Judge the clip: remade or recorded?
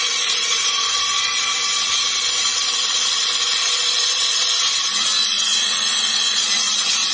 remade